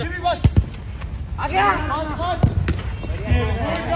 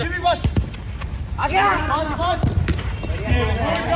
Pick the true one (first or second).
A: first